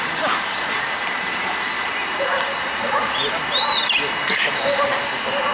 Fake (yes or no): no